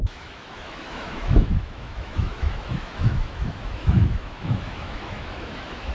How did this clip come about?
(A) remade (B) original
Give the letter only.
A